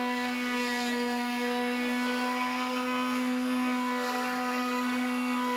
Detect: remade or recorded remade